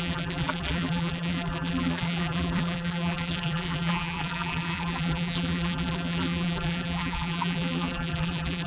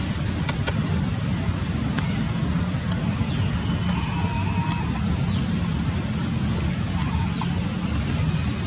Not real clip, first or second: first